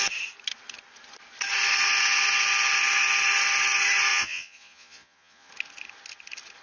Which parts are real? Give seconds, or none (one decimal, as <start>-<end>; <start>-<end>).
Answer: 0.0-4.1; 5.5-6.6

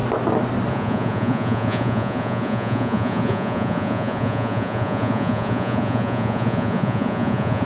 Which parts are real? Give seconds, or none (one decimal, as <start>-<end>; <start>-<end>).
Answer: 0.0-0.7

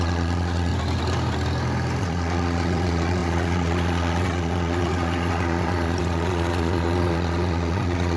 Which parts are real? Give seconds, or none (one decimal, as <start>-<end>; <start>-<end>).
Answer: 0.7-2.0

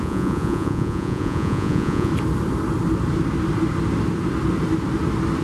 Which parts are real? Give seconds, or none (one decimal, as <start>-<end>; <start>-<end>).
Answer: 2.1-5.4

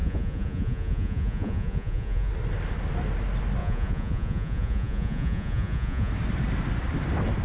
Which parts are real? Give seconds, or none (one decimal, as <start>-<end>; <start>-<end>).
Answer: 2.3-3.6; 6.1-7.4

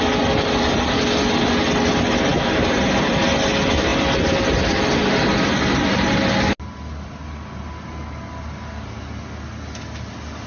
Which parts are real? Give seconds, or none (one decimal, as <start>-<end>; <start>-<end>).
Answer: 0.0-10.5